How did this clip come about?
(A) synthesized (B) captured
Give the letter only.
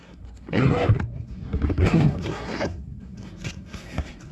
A